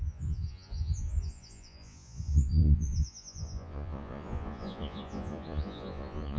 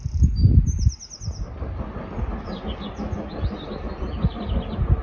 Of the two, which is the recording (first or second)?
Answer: second